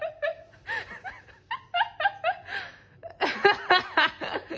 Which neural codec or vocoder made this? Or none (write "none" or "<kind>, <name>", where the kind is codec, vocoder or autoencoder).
none